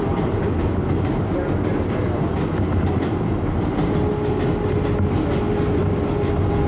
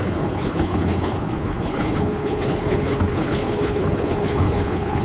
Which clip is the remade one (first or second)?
second